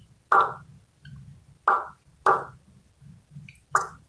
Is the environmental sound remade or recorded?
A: recorded